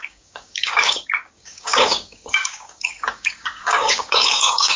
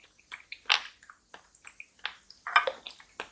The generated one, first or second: first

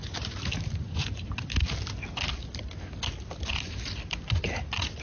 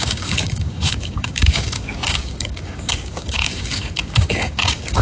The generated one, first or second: second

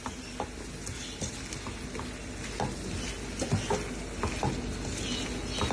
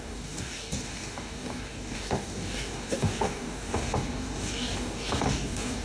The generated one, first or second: second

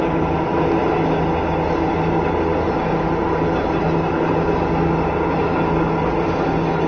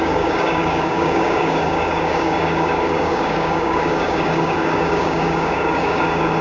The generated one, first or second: second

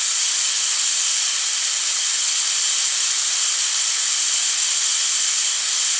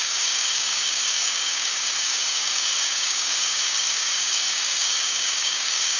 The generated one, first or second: second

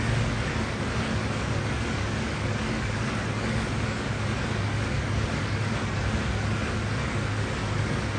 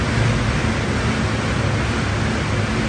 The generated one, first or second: first